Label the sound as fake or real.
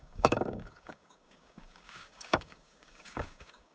fake